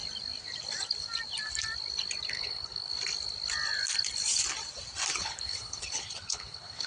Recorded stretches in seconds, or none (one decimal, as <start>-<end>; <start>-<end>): 0.0-2.3; 2.9-5.2